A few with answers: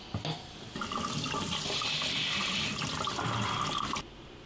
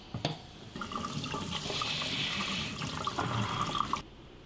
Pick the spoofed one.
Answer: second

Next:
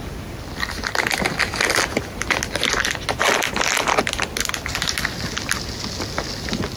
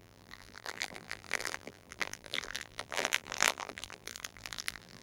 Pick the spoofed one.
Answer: second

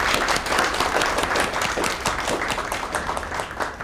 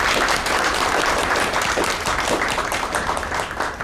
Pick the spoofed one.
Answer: second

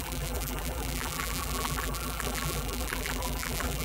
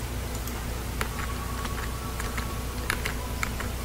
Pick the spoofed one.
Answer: first